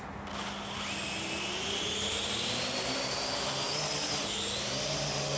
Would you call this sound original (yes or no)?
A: yes